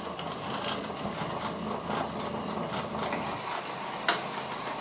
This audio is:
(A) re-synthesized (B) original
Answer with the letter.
B